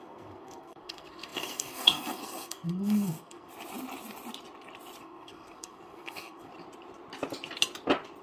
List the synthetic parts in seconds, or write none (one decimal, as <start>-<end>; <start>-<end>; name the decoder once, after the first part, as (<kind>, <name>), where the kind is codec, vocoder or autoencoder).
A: 0.0-3.5 (codec, SNAC); 5.0-6.5